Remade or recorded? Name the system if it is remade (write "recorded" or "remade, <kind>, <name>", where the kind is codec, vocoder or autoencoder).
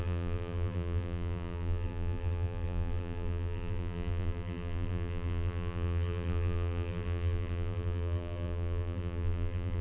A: remade, vocoder, BigVGAN v2